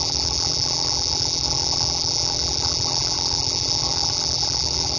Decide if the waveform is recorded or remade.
remade